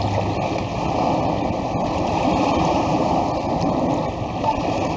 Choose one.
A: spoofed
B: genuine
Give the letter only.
B